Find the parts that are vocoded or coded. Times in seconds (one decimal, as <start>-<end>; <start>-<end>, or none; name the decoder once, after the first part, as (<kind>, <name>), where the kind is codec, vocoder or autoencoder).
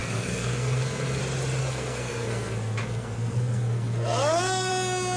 0.0-1.2 (codec, SNAC); 1.6-4.7